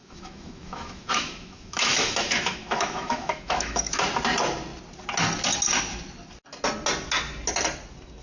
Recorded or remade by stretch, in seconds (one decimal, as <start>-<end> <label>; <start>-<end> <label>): 0.0-4.0 remade; 4.0-8.2 recorded